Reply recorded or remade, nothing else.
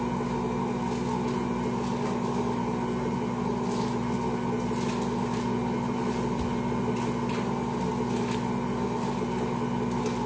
recorded